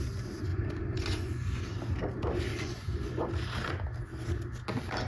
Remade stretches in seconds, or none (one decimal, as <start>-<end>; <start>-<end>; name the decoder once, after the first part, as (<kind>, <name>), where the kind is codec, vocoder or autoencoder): 0.5-1.6 (vocoder, Vocos); 2.5-3.3